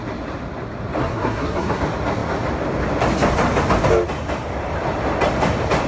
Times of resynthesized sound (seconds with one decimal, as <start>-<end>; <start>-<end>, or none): 1.0-1.8